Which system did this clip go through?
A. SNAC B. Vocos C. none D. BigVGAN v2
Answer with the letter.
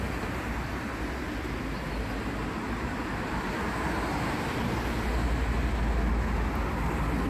C